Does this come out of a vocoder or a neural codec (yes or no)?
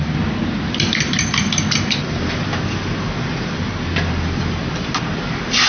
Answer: no